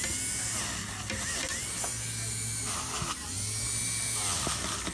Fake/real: real